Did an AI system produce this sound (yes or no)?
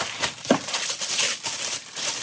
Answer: no